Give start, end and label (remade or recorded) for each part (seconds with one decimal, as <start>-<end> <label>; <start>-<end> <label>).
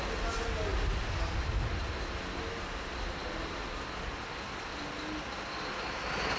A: 0.0-6.4 recorded